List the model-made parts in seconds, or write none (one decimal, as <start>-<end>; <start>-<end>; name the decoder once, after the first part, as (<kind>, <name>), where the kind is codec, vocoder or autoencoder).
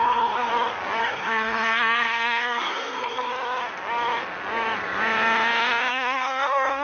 0.0-0.5 (codec, SNAC); 1.0-3.3; 5.9-6.8